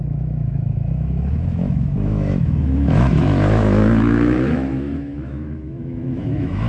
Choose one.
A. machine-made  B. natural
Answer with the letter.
A